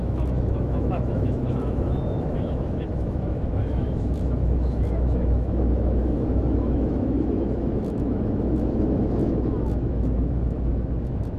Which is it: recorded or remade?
remade